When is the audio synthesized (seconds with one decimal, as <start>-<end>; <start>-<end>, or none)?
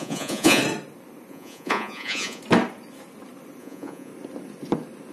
0.0-0.6; 1.3-2.4; 3.6-4.1